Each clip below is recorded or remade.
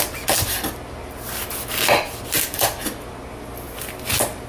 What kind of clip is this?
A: recorded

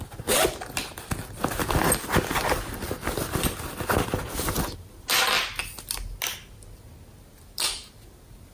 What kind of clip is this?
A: recorded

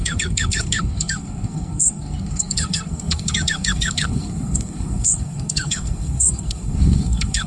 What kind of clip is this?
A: remade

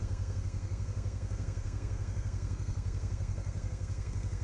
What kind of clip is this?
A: remade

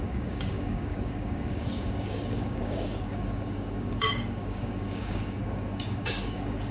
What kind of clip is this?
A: remade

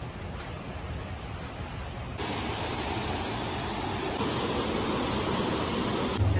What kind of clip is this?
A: recorded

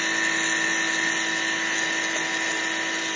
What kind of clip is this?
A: recorded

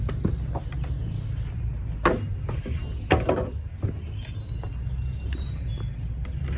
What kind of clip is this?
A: recorded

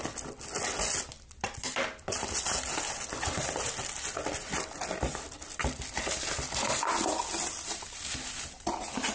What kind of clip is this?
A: recorded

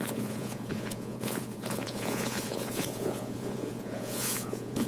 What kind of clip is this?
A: remade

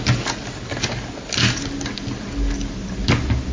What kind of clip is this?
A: recorded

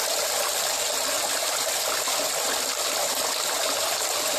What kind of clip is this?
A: recorded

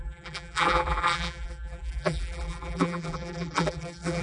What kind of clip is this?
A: remade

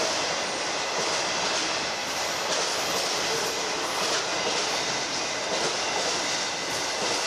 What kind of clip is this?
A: recorded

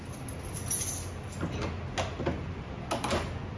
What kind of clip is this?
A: recorded